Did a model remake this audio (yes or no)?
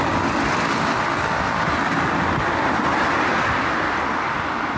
no